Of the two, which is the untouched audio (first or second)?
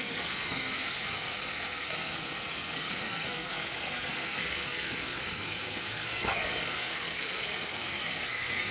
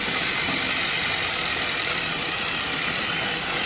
second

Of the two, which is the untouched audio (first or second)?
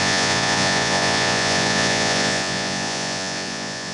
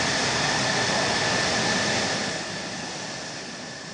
second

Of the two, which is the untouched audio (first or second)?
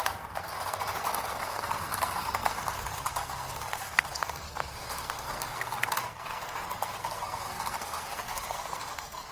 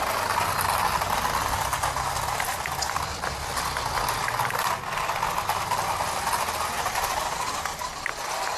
second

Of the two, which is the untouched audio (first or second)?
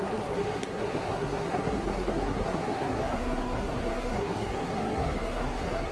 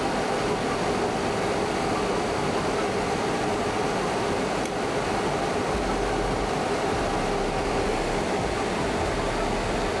second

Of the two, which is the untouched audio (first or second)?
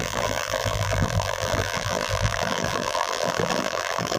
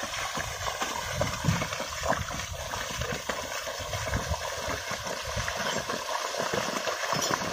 second